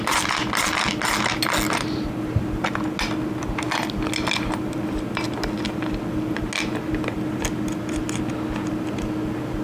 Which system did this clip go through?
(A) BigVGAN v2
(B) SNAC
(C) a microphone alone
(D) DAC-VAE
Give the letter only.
C